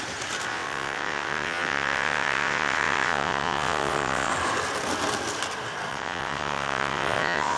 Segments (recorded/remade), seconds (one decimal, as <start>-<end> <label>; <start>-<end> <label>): 0.0-0.5 recorded; 0.5-4.3 remade; 4.3-5.9 recorded; 5.9-7.6 remade